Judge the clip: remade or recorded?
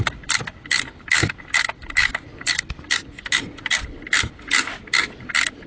recorded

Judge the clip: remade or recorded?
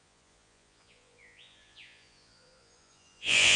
remade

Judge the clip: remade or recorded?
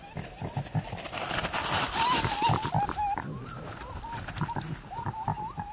recorded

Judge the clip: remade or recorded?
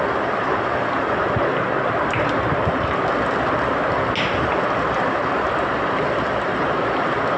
recorded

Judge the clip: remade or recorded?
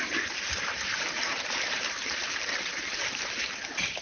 remade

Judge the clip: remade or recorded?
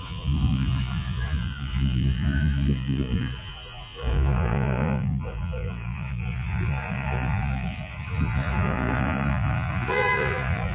remade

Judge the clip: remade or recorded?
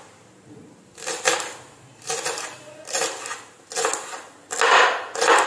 recorded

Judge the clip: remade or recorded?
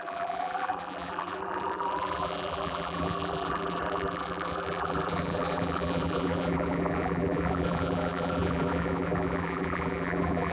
remade